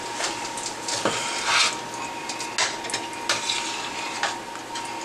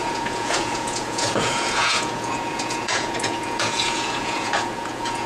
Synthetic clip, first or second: second